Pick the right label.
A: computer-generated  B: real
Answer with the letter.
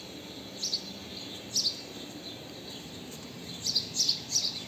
B